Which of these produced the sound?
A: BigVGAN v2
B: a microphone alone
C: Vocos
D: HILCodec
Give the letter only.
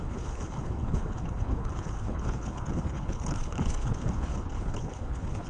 D